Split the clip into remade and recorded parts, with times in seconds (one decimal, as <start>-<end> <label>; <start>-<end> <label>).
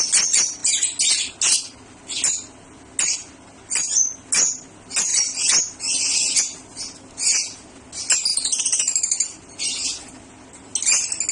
0.0-5.1 recorded; 5.1-5.6 remade; 5.6-8.3 recorded; 8.3-9.5 remade; 9.5-11.3 recorded